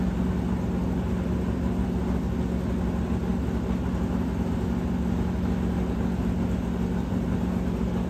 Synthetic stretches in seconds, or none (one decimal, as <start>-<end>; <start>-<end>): none